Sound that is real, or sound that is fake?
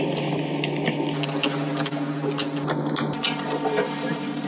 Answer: real